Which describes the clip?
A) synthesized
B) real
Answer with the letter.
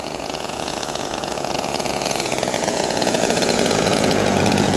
A